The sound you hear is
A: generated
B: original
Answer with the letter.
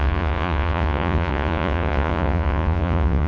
A